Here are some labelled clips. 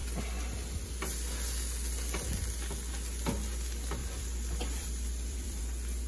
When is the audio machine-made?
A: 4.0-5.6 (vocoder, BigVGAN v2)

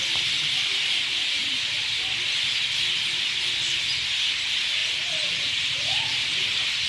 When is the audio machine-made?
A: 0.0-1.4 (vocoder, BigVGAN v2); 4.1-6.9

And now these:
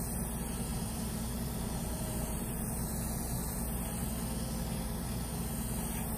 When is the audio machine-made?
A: 0.7-2.9 (vocoder, BigVGAN v2)

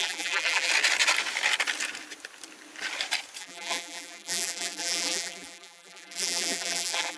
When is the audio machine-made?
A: 0.0-0.7 (vocoder, BigVGAN v2); 3.4-7.2

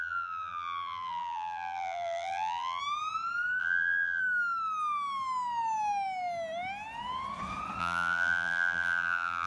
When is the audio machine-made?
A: 0.0-2.8 (vocoder, BigVGAN v2); 3.6-4.2; 7.8-9.5

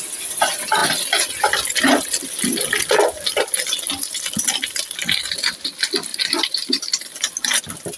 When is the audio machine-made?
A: 0.8-5.6 (vocoder, BigVGAN v2); 6.1-7.6

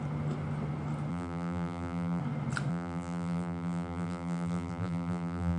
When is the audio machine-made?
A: 1.1-2.2 (vocoder, BigVGAN v2); 2.7-5.6